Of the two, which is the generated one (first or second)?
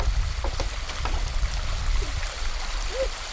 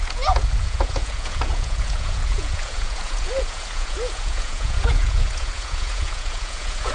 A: second